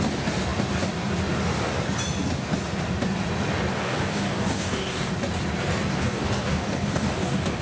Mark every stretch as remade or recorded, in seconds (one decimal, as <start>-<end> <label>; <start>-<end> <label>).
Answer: 0.0-3.7 recorded; 3.7-5.1 remade; 5.1-5.9 recorded; 5.9-7.6 remade